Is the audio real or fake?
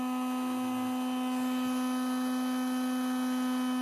real